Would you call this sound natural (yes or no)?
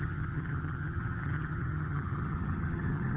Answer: no